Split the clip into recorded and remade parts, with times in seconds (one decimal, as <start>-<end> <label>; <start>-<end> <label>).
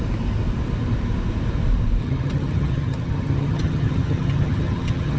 0.0-2.0 recorded; 2.0-5.2 remade